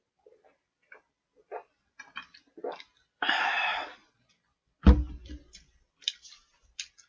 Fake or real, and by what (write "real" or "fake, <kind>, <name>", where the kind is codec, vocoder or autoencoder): fake, vocoder, BigVGAN v2